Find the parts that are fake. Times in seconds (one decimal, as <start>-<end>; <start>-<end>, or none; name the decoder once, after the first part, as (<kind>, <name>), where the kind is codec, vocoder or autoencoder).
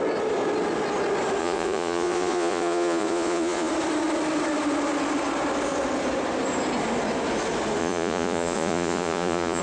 1.4-3.7 (vocoder, Vocos); 7.8-9.6